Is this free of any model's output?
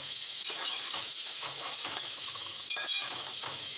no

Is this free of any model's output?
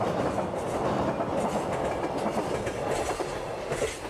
yes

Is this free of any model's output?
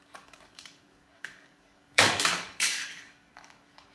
no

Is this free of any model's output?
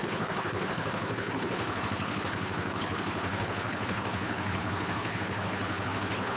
no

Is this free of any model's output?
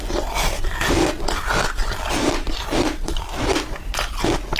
yes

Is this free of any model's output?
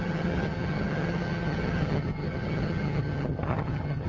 no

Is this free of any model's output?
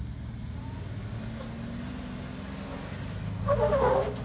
yes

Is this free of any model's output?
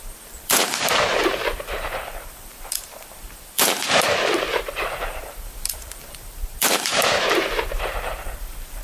no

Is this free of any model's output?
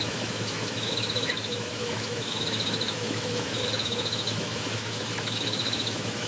no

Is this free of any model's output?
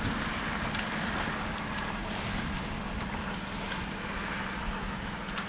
yes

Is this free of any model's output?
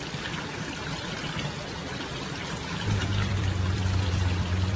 no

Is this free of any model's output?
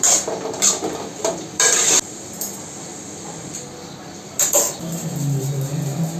yes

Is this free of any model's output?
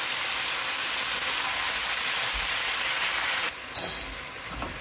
yes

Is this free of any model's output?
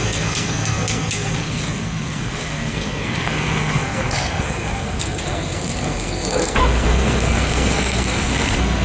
no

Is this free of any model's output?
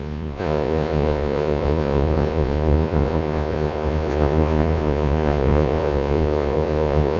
no